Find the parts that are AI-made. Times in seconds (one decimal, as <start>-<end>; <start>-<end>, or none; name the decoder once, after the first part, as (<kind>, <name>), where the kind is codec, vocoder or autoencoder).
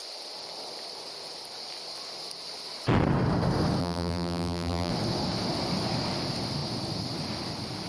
3.8-4.9 (vocoder, BigVGAN v2)